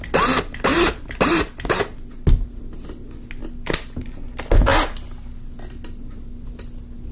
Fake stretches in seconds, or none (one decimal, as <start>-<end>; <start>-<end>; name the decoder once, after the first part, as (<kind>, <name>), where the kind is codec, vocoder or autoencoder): 0.7-1.4 (vocoder, BigVGAN v2)